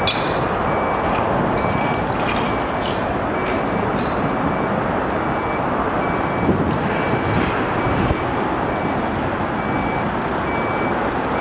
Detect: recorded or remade recorded